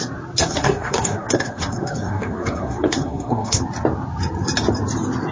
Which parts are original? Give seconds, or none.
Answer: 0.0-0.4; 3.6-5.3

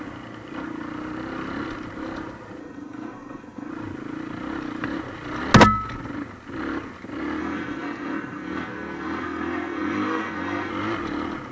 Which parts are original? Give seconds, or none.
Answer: 0.0-2.6; 3.7-7.4; 10.7-11.5

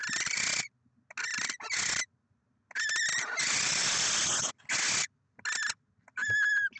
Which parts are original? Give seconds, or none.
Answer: 0.0-6.8

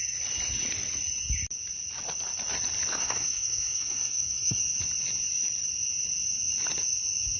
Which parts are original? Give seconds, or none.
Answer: 0.0-2.9; 4.6-7.4